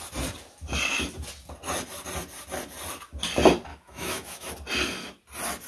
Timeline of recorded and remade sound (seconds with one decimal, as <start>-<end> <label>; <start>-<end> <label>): 0.0-3.7 recorded; 3.7-4.5 remade; 4.5-5.7 recorded